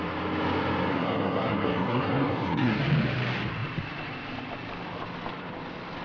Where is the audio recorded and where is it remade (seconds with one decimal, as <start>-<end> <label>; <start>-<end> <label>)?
0.0-0.9 recorded; 0.9-2.8 remade; 2.8-6.0 recorded